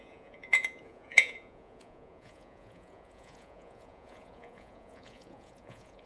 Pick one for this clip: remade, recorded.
remade